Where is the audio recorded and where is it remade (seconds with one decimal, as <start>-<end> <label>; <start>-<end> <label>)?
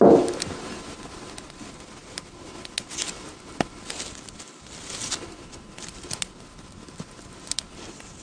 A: 0.0-8.2 recorded